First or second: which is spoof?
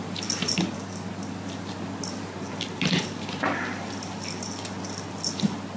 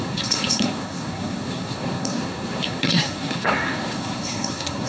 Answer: second